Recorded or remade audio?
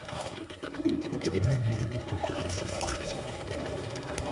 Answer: remade